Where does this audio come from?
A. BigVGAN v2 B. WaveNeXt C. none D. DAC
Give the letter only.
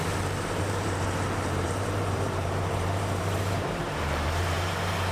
A